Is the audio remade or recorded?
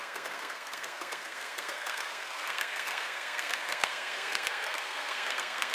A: remade